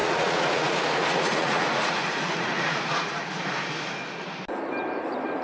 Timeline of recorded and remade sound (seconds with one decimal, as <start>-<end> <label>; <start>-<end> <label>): 0.0-3.2 remade; 3.2-5.4 recorded